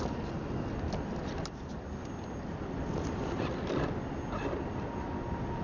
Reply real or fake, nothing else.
real